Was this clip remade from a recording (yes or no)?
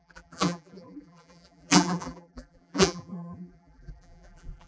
yes